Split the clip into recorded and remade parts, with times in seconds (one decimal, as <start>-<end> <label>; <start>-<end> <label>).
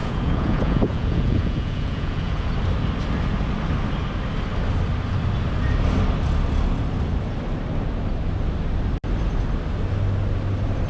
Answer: 0.0-2.5 remade; 2.5-10.9 recorded